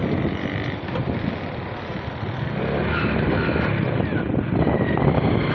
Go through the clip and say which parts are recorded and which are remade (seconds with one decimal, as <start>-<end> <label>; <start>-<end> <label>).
0.0-1.3 remade; 1.3-3.4 recorded; 3.4-4.3 remade; 4.3-5.5 recorded